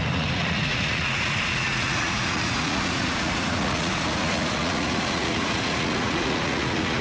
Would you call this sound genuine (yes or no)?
no